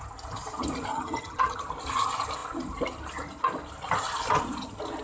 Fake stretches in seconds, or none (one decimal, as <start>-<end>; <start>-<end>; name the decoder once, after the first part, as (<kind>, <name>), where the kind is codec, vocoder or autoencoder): 0.9-1.6 (vocoder, HiFi-GAN)